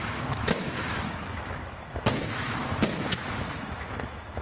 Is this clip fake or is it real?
fake